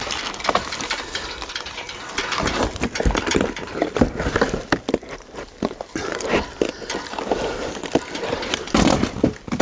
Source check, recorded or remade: remade